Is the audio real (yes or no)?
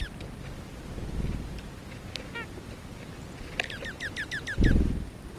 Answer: yes